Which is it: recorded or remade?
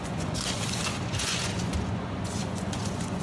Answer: remade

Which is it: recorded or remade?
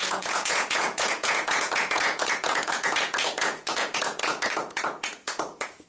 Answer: remade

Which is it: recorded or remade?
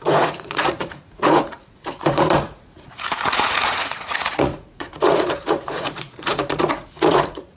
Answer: remade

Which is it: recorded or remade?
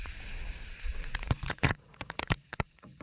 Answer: remade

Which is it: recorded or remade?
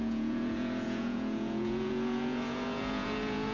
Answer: remade